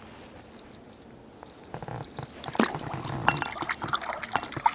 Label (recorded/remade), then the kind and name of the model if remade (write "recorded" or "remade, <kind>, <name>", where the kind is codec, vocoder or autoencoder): recorded